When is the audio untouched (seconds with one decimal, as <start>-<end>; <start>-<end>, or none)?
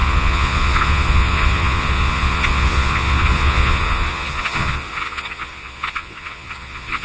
none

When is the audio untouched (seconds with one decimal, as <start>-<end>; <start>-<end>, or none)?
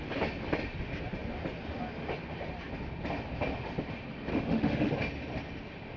0.0-4.3; 4.9-6.0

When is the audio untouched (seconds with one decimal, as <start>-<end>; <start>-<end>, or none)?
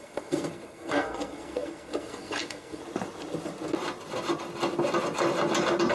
2.8-5.9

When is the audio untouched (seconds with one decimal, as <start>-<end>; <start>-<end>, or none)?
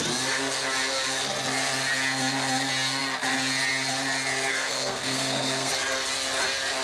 0.0-4.5; 5.7-6.8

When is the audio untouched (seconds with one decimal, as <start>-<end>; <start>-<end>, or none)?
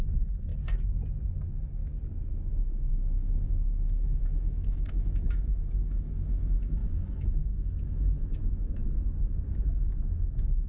0.5-1.3; 1.8-2.3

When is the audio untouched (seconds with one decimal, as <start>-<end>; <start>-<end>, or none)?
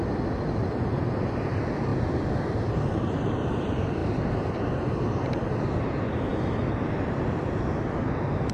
0.0-4.0; 5.5-8.5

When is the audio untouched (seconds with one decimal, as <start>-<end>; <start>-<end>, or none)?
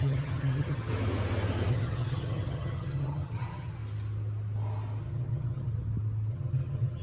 0.9-1.7; 3.8-5.0; 5.7-6.3